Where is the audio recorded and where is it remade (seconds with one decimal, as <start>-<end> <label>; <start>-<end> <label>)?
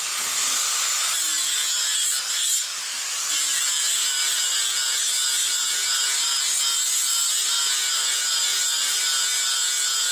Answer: 0.0-10.1 recorded